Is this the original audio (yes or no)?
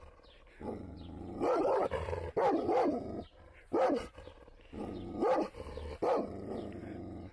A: yes